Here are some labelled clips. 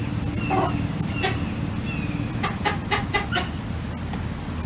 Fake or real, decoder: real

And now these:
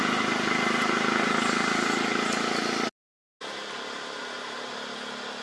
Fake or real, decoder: real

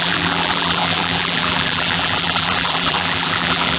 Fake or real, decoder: fake, vocoder, BigVGAN v2